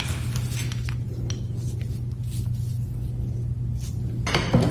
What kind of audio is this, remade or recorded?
recorded